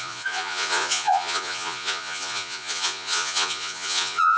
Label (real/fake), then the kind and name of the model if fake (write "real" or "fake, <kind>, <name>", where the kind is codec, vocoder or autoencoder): fake, vocoder, Vocos